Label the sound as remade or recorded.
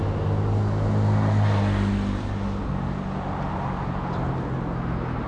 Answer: recorded